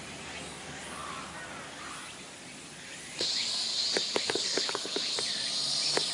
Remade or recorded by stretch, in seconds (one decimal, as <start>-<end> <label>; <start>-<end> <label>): 0.0-4.2 recorded; 4.2-5.2 remade; 5.2-6.1 recorded